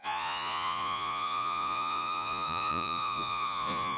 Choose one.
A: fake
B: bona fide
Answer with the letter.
A